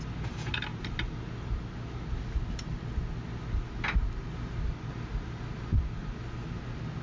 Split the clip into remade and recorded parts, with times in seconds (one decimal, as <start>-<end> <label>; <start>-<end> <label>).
0.0-7.0 recorded